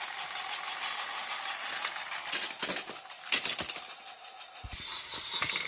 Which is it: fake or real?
real